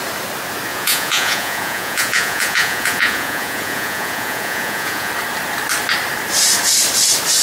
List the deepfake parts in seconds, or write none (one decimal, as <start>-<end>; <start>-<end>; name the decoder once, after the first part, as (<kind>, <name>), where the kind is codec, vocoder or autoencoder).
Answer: 0.7-5.1 (vocoder, Vocos)